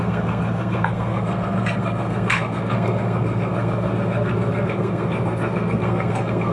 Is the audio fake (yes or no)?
yes